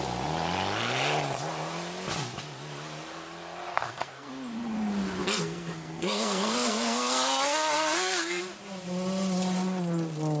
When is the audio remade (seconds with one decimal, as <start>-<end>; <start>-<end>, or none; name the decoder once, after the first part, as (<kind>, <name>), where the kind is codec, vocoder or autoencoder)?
3.7-4.3 (codec, SNAC); 5.2-8.4